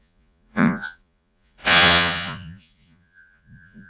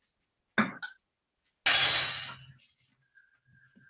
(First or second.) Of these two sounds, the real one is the second